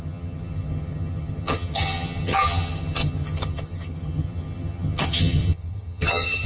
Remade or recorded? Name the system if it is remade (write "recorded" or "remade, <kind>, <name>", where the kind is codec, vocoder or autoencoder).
remade, vocoder, HiFi-GAN